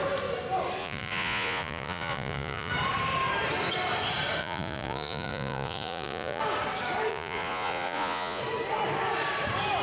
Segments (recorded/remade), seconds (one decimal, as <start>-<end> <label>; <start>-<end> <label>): 0.0-0.8 recorded; 0.8-2.7 remade; 2.7-4.4 recorded; 4.4-6.4 remade; 6.4-7.1 recorded; 7.1-8.4 remade; 8.4-9.8 recorded